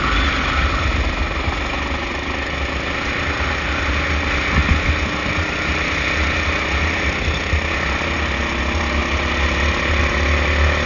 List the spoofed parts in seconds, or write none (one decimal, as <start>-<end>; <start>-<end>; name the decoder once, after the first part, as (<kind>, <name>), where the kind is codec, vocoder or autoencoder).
none